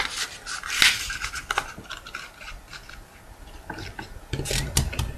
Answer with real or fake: real